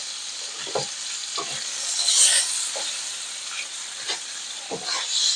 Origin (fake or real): real